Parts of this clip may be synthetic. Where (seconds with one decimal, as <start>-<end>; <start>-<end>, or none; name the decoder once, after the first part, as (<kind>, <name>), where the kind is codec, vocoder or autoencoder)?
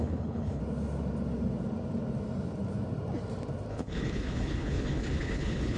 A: 0.0-0.6 (codec, HILCodec); 3.7-5.8